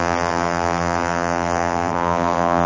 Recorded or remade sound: remade